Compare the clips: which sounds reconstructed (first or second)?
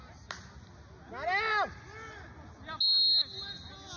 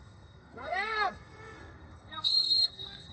second